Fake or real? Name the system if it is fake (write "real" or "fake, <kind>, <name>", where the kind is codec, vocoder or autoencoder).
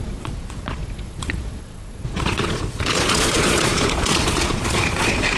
fake, vocoder, Vocos